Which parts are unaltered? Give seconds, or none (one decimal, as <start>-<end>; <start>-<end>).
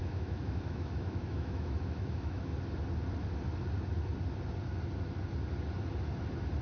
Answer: 2.5-6.6